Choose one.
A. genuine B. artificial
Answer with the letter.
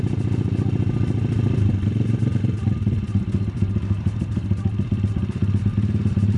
B